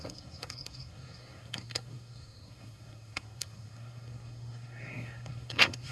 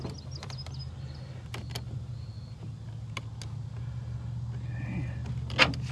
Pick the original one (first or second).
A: second